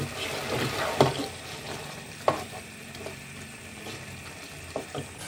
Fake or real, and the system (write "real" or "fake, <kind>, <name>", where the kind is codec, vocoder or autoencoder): real